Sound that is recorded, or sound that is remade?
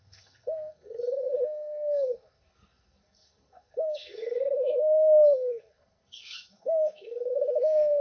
remade